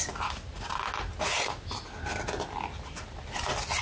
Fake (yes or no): no